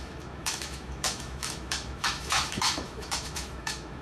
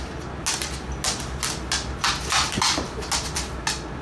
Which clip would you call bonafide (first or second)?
second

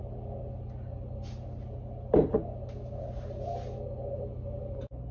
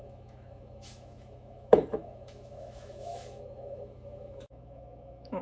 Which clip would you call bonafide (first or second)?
first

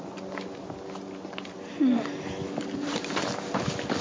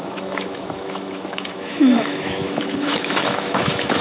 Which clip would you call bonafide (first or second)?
first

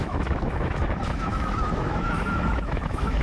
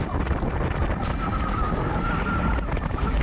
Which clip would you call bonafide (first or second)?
second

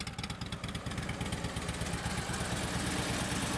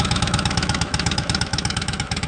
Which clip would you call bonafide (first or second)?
first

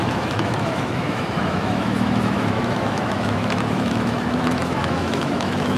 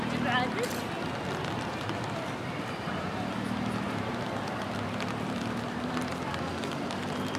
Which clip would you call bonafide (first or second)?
second